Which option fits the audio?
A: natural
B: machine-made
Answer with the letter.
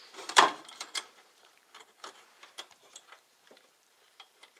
B